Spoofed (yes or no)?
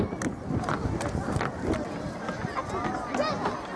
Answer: no